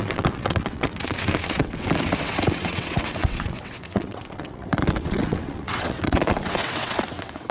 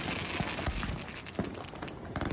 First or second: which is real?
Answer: second